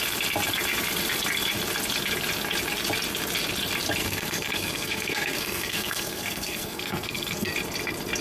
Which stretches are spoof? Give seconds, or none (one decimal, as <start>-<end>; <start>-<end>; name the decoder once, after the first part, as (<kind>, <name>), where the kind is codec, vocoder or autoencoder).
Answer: 4.0-7.5 (codec, SNAC)